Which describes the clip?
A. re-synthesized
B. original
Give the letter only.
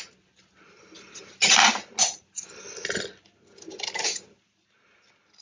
B